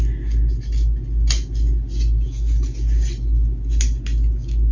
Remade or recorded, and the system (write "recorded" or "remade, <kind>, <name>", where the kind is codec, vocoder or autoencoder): recorded